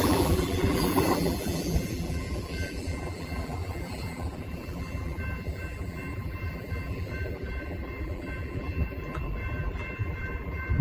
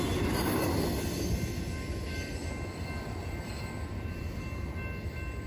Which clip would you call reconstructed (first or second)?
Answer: first